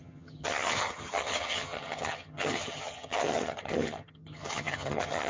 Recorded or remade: remade